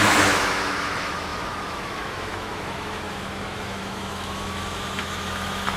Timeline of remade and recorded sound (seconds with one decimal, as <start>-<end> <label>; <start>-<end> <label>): 0.0-5.8 remade